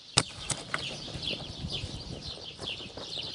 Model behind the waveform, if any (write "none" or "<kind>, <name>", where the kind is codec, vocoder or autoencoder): vocoder, BigVGAN v2